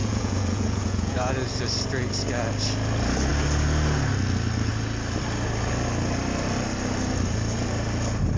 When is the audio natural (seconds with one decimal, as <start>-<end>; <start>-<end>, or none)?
1.3-8.4